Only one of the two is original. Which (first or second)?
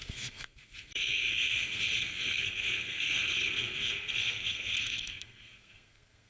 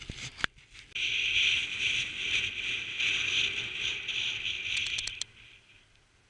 second